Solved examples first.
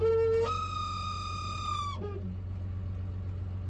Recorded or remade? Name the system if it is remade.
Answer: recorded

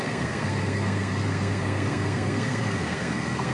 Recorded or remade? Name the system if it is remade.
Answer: remade, codec, SNAC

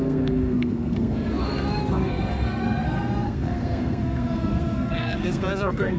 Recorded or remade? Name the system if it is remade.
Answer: remade, codec, SNAC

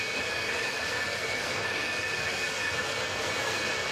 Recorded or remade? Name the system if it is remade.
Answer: remade, codec, SNAC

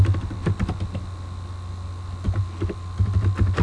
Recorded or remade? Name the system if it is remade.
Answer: recorded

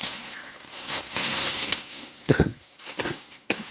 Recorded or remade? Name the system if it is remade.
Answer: remade, codec, SNAC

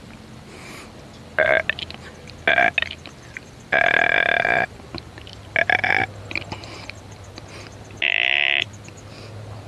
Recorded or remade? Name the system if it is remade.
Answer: recorded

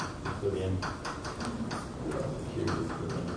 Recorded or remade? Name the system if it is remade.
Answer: recorded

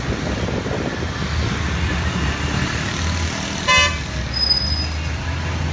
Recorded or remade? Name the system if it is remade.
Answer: recorded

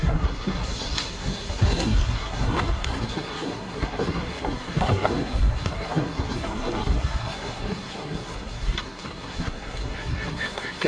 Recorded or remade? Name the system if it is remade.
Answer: remade, codec, SNAC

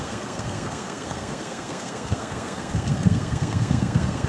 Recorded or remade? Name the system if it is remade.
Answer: remade, codec, SNAC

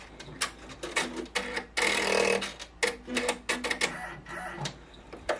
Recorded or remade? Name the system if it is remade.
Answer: recorded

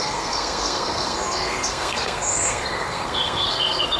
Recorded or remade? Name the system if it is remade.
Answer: remade, codec, SNAC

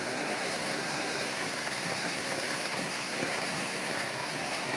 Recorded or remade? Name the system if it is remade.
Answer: remade, codec, SNAC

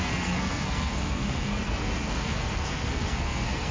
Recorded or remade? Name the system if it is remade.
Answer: remade, codec, SNAC